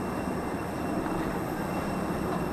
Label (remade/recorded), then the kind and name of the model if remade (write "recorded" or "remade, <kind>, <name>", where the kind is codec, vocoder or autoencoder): remade, vocoder, BigVGAN v2